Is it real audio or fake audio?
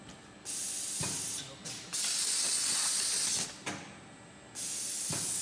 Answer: real